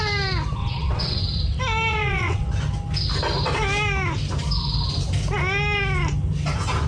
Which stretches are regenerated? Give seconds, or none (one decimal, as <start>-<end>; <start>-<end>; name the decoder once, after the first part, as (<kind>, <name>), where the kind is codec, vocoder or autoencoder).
0.6-1.2 (vocoder, WaveNeXt); 1.9-2.5